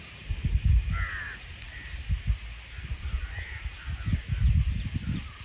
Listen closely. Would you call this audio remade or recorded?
recorded